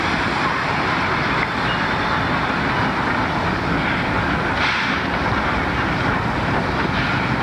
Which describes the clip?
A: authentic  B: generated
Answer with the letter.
A